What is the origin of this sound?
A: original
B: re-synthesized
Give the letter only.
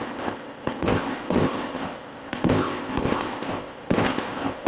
B